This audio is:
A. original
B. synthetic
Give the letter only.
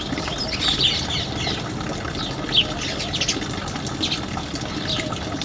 A